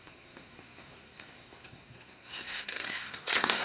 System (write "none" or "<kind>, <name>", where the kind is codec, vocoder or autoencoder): codec, SNAC